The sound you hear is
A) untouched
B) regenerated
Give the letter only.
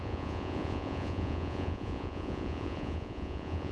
B